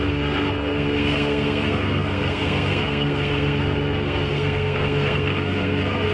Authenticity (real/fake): fake